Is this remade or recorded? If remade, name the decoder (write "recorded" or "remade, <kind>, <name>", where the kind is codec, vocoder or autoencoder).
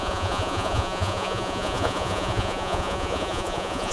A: remade, vocoder, Vocos